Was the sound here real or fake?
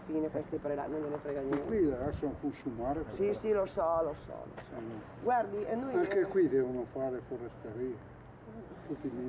real